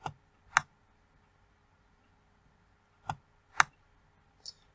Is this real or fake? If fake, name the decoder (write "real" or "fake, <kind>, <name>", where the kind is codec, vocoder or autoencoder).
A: real